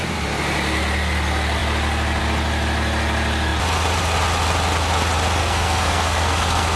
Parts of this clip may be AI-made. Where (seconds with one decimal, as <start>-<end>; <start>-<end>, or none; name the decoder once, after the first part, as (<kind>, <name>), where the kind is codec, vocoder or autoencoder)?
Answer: 5.4-6.8 (codec, SNAC)